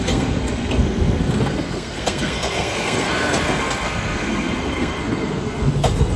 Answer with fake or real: fake